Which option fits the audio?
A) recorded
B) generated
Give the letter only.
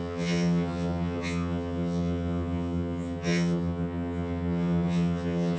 B